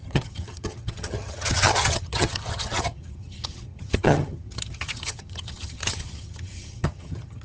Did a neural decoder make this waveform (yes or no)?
yes